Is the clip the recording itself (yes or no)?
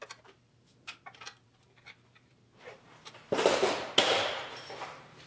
no